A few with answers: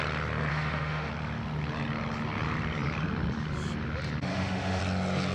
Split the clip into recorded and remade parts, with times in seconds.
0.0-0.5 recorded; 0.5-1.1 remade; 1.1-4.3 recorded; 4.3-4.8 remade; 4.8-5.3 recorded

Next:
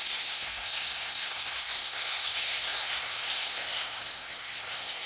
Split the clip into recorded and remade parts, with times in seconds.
0.0-5.1 remade

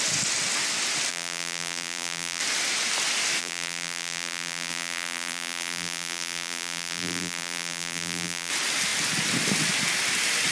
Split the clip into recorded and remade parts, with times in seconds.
0.0-1.1 recorded; 1.1-2.4 remade; 2.4-3.4 recorded; 3.4-8.5 remade; 8.5-10.5 recorded

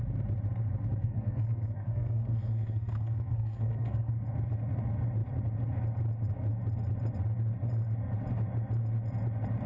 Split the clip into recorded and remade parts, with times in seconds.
0.0-1.0 recorded; 1.0-4.1 remade; 4.1-9.7 recorded